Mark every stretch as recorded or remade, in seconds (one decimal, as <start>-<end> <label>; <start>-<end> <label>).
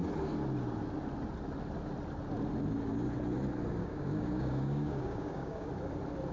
0.0-3.8 recorded; 3.8-5.7 remade; 5.7-6.3 recorded